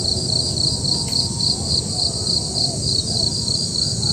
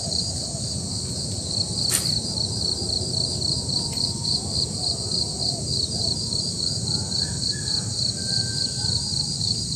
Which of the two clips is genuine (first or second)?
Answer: first